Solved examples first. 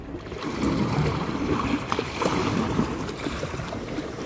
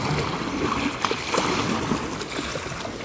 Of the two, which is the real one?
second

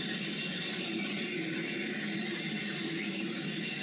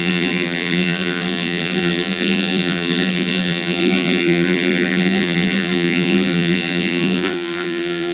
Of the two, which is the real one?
first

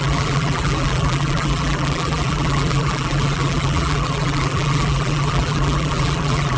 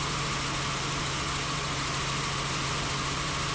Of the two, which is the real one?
second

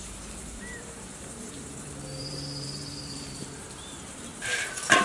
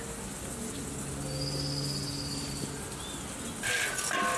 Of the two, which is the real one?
second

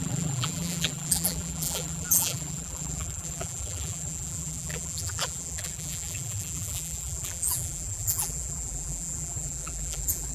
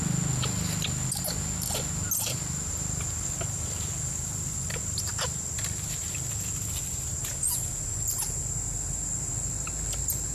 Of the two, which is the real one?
second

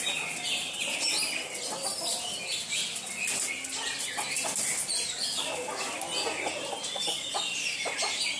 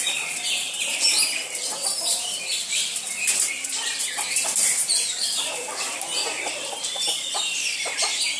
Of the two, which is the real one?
first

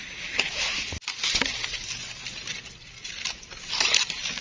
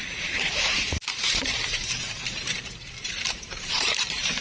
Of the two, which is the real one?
first